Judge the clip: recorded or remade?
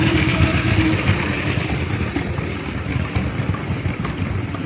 remade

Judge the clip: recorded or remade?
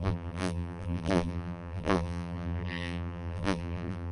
remade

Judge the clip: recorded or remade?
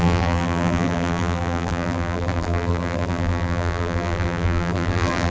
remade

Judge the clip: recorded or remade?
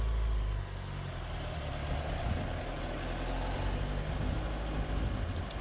recorded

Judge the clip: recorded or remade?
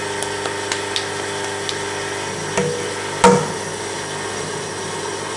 recorded